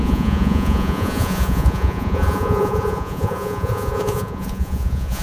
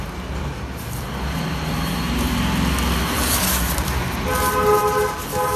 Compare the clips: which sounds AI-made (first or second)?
first